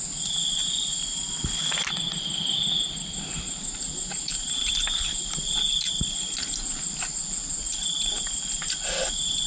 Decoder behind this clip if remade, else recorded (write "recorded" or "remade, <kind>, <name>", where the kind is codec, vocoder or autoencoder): recorded